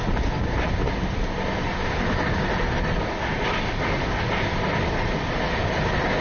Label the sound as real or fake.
real